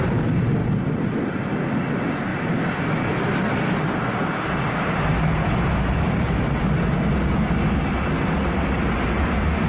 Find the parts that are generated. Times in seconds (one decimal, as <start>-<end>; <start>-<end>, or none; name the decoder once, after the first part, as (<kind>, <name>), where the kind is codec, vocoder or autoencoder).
0.6-1.1 (vocoder, BigVGAN v2)